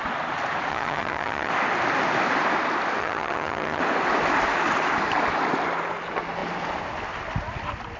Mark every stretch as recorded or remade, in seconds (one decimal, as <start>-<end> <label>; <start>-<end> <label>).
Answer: 0.0-0.7 recorded; 0.7-1.5 remade; 1.5-3.0 recorded; 3.0-3.8 remade; 3.8-8.0 recorded